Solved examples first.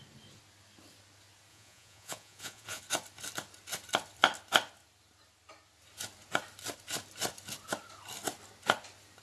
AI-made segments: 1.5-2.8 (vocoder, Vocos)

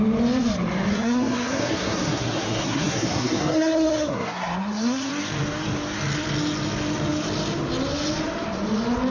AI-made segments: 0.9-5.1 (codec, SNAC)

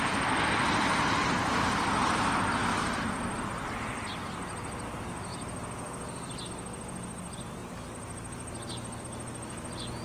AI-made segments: 2.6-3.7 (vocoder, BigVGAN v2)